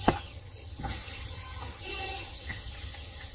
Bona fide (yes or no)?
no